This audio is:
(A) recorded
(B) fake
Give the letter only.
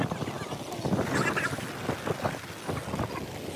A